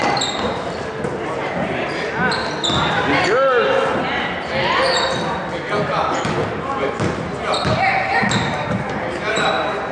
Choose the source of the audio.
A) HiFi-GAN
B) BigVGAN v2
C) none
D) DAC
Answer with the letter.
C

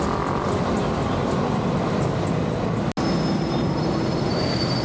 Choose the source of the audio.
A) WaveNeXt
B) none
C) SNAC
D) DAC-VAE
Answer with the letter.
B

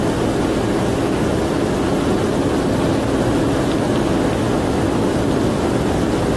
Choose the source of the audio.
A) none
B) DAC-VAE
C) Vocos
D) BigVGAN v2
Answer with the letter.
A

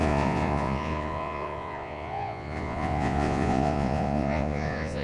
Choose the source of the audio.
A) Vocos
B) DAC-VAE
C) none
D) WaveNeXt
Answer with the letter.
A